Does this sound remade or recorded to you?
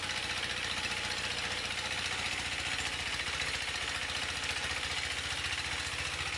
recorded